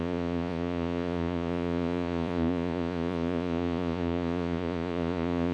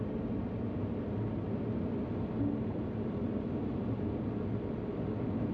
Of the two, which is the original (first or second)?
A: second